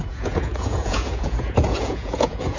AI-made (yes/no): yes